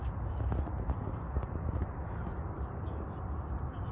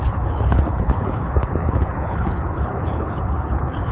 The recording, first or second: first